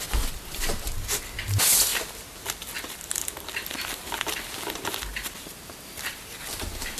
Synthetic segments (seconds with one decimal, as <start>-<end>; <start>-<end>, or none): none